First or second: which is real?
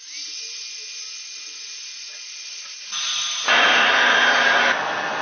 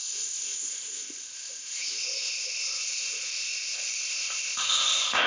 first